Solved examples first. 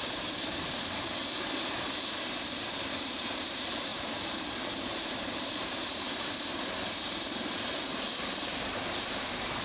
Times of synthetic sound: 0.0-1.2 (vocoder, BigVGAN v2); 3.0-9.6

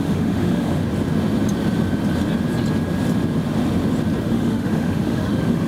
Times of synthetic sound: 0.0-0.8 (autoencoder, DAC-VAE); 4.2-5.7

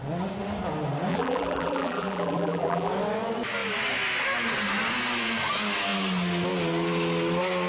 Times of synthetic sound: 1.1-2.9 (vocoder, BigVGAN v2)

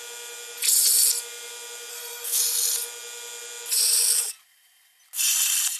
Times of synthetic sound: 1.9-2.4 (codec, SNAC)